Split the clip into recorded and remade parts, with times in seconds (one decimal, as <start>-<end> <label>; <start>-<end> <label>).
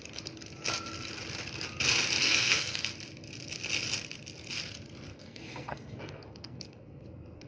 0.0-2.2 recorded; 2.2-2.9 remade; 2.9-5.1 recorded; 5.1-7.5 remade